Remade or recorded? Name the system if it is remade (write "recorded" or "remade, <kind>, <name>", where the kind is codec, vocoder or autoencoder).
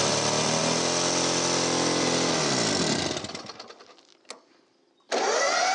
recorded